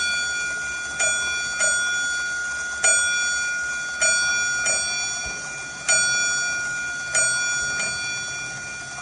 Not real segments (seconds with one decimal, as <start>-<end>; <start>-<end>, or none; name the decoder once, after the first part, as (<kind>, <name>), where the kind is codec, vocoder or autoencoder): none